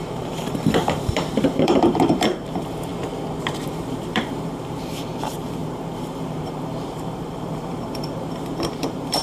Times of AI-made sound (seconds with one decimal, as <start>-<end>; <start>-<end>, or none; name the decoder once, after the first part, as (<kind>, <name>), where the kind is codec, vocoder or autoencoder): 0.0-2.9 (vocoder, BigVGAN v2); 3.5-9.2